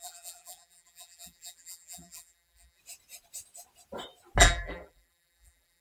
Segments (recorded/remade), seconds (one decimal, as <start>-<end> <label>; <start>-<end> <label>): 0.0-2.8 remade; 2.8-4.4 recorded; 4.4-5.8 remade